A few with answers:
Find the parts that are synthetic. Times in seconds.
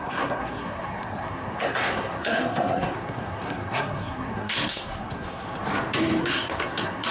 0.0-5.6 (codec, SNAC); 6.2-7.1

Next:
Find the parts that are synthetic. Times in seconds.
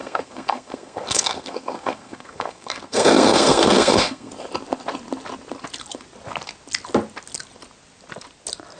0.0-4.3 (codec, SNAC)